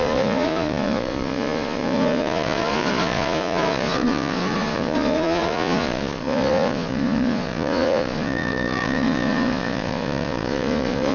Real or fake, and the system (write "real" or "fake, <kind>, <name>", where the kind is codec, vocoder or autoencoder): fake, vocoder, Vocos